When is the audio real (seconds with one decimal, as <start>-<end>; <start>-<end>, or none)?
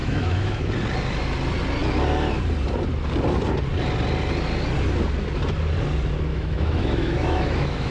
0.7-6.3